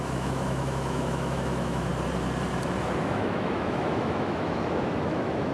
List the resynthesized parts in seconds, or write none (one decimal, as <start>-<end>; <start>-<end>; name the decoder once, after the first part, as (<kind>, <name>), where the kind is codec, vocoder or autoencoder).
0.0-1.9 (autoencoder, DAC-VAE); 3.0-5.5